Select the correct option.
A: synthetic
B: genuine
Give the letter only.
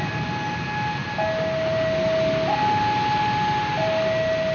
B